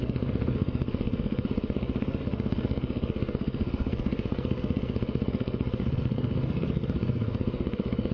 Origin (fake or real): fake